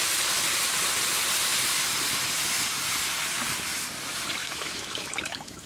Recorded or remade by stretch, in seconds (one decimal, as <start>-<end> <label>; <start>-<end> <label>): 0.0-4.4 recorded; 4.4-5.7 remade